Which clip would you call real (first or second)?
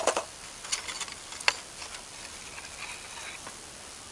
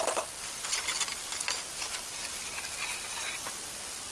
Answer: first